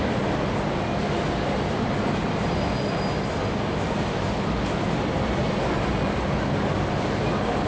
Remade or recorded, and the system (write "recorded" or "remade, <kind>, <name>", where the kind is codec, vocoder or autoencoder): recorded